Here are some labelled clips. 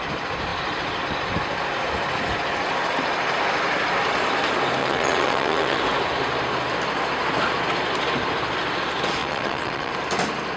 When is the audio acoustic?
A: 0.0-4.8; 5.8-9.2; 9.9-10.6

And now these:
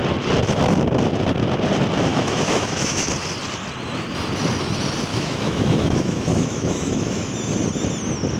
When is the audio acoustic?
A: 0.0-2.1; 3.1-5.1; 7.3-8.4